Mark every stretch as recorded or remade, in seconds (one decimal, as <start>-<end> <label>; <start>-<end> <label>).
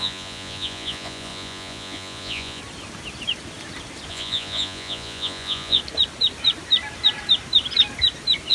0.0-2.6 remade; 2.6-4.1 recorded; 4.1-5.8 remade; 5.8-8.5 recorded